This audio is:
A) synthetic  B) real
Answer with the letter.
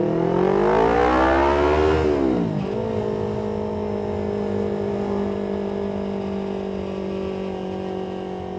B